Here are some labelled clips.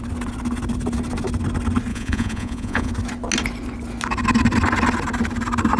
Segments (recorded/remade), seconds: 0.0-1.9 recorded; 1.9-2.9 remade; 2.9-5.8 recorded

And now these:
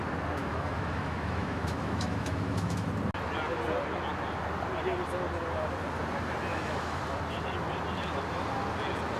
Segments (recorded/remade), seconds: 0.0-0.4 recorded; 0.4-2.9 remade; 2.9-6.5 recorded; 6.5-7.0 remade; 7.0-9.2 recorded